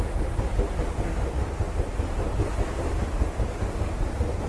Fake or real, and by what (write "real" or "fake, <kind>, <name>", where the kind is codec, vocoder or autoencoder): real